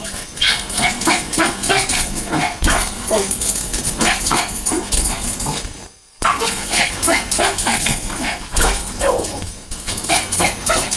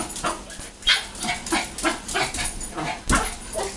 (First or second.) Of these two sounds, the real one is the second